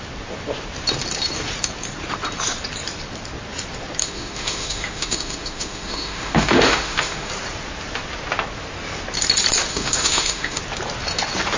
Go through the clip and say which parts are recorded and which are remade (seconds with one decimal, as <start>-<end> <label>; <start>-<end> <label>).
0.0-4.0 recorded; 4.0-7.3 remade; 7.3-9.7 recorded; 9.7-10.6 remade; 10.6-11.6 recorded